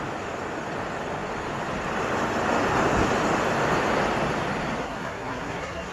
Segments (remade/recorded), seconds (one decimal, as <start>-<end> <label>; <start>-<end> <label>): 0.0-4.8 recorded; 4.8-5.9 remade

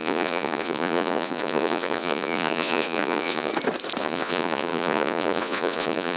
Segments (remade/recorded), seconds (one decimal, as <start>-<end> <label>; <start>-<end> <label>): 0.0-3.5 remade; 3.5-4.0 recorded; 4.0-6.2 remade

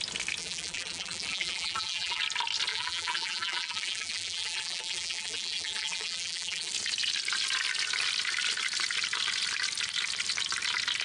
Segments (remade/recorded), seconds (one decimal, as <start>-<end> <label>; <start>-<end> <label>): 0.0-0.4 recorded; 0.4-2.2 remade; 2.2-2.7 recorded; 2.7-6.7 remade; 6.7-11.0 recorded

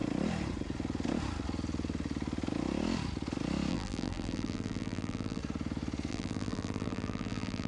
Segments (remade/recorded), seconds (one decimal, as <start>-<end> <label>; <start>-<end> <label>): 0.0-3.7 recorded; 3.7-5.4 remade; 5.4-6.1 recorded; 6.1-7.7 remade